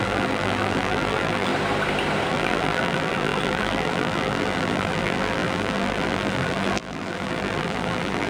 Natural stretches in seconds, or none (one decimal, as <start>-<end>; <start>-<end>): 1.5-2.3